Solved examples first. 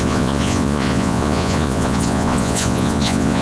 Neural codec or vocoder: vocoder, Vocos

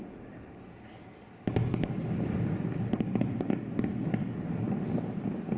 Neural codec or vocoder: none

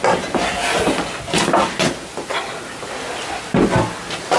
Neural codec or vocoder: none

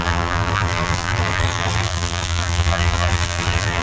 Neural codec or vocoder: vocoder, BigVGAN v2